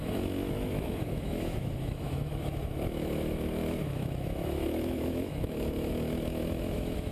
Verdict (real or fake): fake